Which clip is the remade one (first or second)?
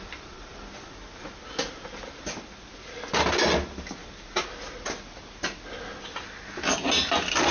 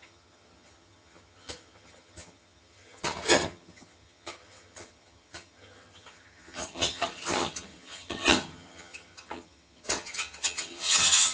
second